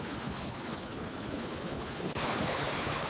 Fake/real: fake